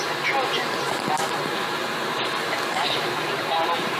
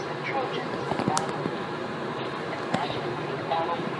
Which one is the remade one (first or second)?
second